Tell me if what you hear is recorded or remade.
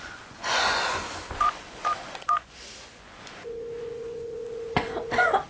remade